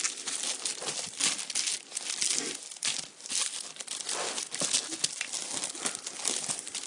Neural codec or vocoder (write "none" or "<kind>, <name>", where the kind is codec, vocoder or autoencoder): none